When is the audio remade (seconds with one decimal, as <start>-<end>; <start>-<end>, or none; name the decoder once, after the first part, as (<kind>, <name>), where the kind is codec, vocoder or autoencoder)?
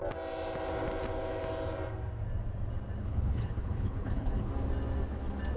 3.0-4.5 (codec, HILCodec)